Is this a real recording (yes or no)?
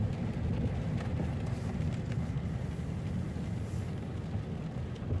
yes